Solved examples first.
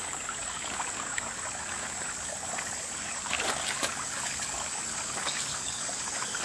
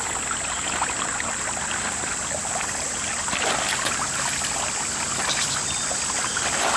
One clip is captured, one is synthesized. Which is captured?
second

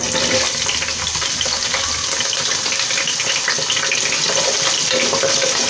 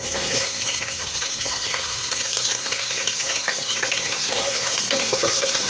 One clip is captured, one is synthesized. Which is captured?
first